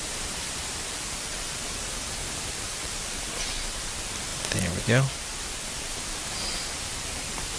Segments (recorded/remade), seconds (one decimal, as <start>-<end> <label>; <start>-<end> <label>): 0.0-5.3 remade; 5.3-7.0 recorded; 7.0-7.6 remade